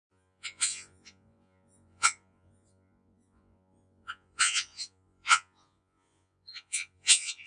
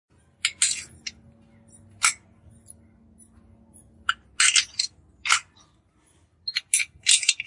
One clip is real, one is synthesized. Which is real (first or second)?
second